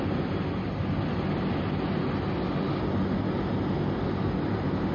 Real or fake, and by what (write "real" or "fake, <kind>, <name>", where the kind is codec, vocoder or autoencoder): real